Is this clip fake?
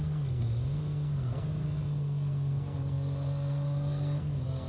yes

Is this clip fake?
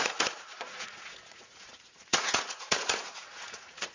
yes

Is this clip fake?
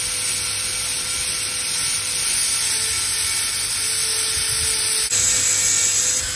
no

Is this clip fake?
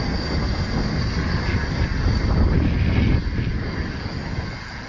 no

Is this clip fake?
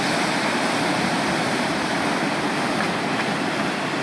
no